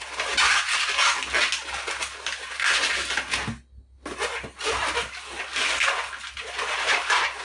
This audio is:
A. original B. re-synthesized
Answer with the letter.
A